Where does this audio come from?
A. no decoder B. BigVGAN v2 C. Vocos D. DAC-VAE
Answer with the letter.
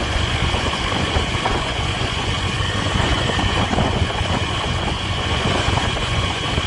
C